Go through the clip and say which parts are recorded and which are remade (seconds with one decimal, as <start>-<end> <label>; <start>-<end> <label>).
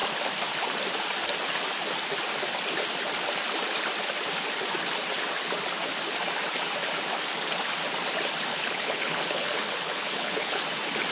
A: 0.0-8.5 recorded; 8.5-10.6 remade; 10.6-11.1 recorded